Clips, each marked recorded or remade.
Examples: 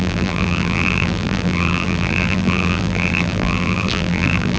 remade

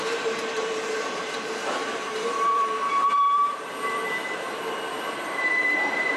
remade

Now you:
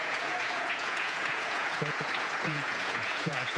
remade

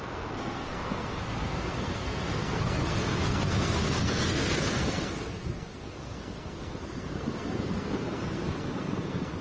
remade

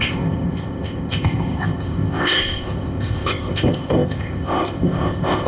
remade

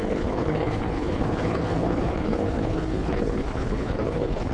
remade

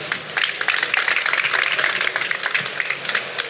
recorded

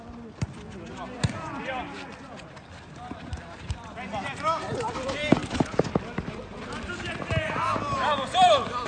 remade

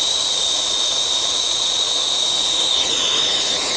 remade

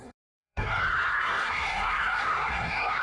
remade